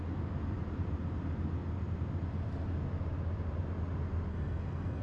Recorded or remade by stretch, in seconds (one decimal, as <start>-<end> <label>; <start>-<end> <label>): 0.0-4.3 recorded; 4.3-5.0 remade

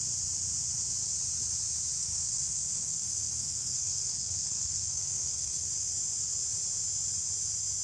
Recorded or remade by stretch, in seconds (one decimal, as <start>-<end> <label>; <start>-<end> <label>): 0.0-2.0 recorded; 2.0-5.7 remade; 5.7-7.8 recorded

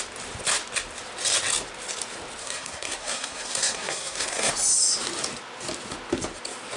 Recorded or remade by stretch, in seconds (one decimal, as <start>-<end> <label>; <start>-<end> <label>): 0.0-2.4 recorded; 2.4-4.5 remade; 4.5-6.8 recorded

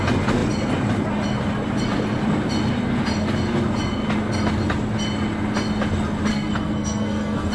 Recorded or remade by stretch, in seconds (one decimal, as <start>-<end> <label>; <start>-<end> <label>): 0.0-6.3 recorded; 6.3-7.5 remade

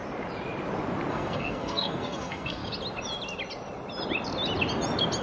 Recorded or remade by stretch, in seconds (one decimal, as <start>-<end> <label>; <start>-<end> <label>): 0.0-1.1 recorded; 1.1-2.6 remade; 2.6-5.2 recorded